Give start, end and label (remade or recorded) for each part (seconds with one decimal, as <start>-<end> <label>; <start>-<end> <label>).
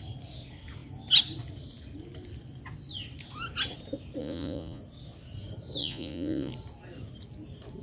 0.0-4.2 recorded; 4.2-4.8 remade; 4.8-5.8 recorded; 5.8-6.5 remade; 6.5-7.8 recorded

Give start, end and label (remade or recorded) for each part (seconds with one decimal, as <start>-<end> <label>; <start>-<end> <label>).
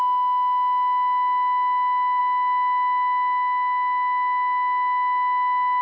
0.0-5.8 recorded